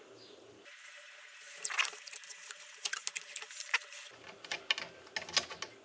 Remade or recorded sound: recorded